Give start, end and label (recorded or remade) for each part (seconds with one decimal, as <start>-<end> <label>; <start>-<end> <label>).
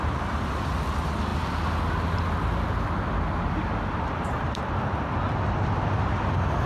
0.0-1.3 remade; 1.3-4.1 recorded; 4.1-6.7 remade